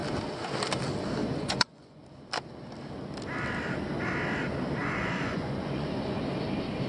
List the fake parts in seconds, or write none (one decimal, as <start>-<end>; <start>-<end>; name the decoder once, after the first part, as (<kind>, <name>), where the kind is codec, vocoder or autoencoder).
1.2-2.0 (vocoder, Vocos); 4.8-6.2